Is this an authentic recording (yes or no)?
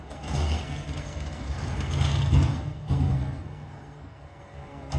no